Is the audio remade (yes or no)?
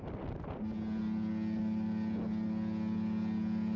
no